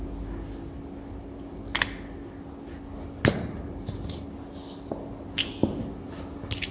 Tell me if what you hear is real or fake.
real